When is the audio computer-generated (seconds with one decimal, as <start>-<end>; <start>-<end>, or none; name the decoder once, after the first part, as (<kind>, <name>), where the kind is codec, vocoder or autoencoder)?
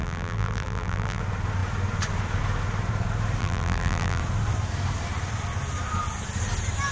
0.0-1.2 (vocoder, BigVGAN v2); 3.4-4.2